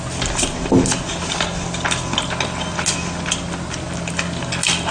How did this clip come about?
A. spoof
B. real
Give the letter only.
B